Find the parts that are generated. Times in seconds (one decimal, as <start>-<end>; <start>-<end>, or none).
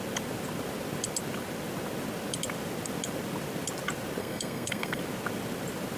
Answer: 4.2-5.0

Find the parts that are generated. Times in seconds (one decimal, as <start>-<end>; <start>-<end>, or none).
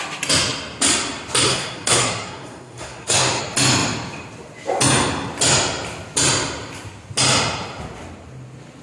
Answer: 1.5-3.4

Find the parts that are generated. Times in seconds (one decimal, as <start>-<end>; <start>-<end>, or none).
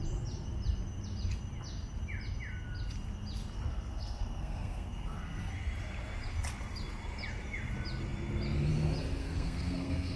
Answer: 3.7-5.5; 9.2-10.2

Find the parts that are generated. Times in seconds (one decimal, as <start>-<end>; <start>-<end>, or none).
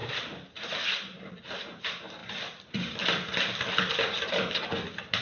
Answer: none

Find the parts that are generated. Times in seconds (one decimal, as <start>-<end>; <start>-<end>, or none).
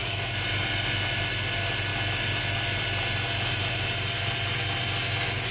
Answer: none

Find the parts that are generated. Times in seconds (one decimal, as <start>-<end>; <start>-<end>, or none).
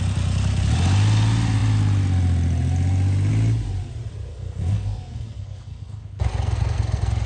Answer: 4.3-7.3